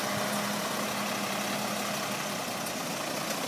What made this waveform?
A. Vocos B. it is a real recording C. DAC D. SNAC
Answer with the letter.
B